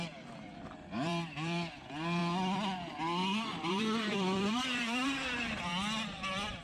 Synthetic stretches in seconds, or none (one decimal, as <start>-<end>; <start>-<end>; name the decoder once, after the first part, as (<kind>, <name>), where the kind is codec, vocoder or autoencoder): 0.0-2.2 (vocoder, BigVGAN v2); 3.7-6.6

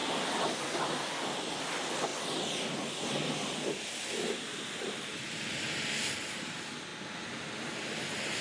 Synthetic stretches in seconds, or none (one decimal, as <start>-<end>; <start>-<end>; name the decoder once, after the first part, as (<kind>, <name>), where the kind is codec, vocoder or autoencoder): 0.0-1.2 (vocoder, BigVGAN v2)

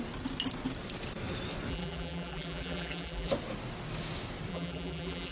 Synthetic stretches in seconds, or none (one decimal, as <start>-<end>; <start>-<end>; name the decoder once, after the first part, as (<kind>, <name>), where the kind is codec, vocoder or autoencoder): 1.7-3.3 (vocoder, BigVGAN v2); 4.5-5.3

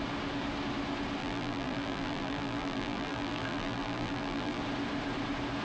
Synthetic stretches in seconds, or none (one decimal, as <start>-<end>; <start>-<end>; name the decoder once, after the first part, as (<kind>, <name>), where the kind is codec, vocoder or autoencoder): 1.2-4.6 (vocoder, BigVGAN v2)